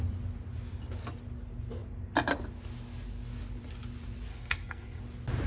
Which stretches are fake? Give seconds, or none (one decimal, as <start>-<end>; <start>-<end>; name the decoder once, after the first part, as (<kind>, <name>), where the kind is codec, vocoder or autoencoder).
4.3-5.0 (codec, SNAC)